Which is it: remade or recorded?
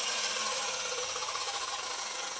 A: remade